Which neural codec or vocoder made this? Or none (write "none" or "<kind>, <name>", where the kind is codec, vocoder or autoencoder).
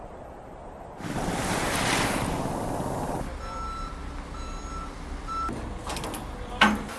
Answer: none